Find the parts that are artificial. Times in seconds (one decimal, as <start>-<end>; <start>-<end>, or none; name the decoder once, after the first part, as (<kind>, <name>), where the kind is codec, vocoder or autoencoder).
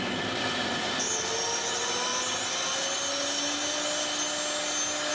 none